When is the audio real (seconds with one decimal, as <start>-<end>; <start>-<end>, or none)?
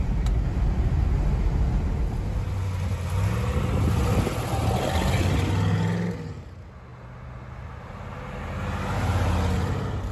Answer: 0.0-10.1